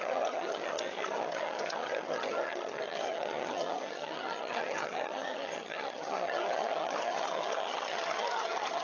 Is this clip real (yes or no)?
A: no